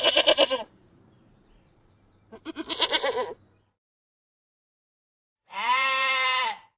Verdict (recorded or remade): remade